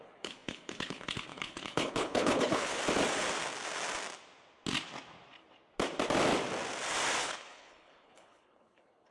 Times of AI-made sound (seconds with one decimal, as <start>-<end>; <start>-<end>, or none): 0.0-2.8; 7.2-9.1